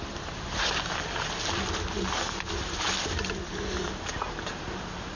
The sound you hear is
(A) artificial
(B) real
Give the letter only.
B